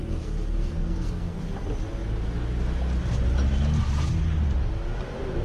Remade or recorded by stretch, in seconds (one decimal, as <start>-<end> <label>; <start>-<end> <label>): 0.0-1.4 remade; 1.4-5.4 recorded